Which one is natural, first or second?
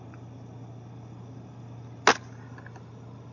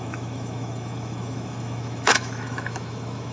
first